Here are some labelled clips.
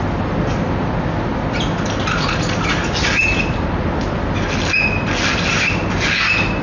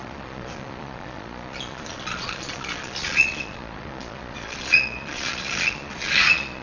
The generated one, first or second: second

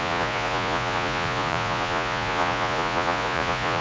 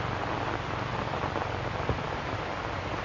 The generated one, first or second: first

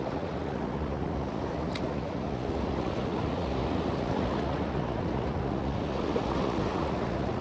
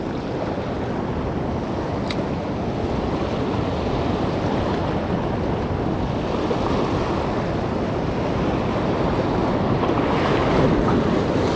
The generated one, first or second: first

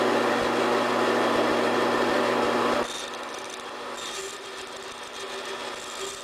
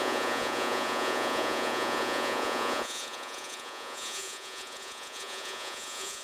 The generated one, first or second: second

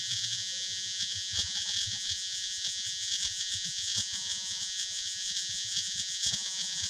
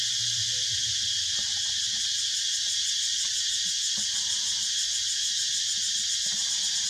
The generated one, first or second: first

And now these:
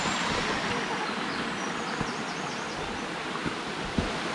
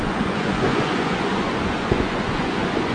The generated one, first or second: second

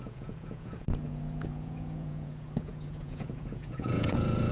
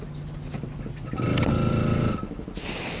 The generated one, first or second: first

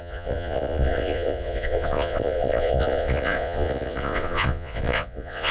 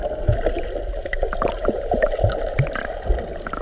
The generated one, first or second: first